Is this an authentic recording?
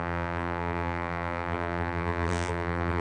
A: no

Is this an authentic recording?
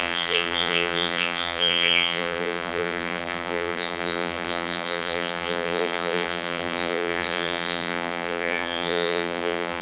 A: no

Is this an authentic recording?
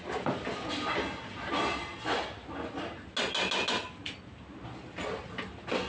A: yes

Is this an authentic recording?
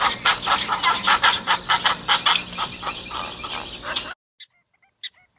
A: yes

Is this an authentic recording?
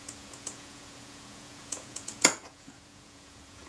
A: no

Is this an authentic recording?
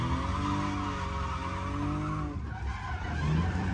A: yes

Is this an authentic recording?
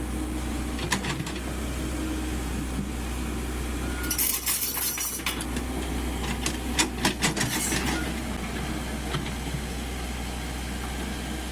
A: yes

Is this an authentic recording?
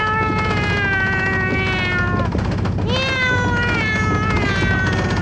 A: yes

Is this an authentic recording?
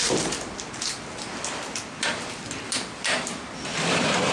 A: no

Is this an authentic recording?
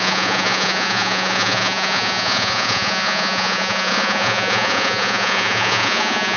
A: no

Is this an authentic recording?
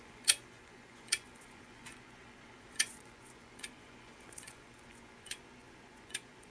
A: no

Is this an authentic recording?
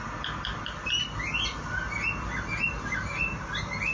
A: yes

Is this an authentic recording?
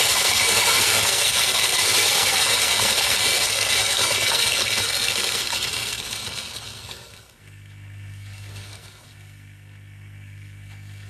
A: no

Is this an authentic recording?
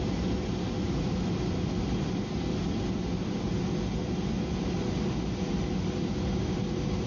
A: yes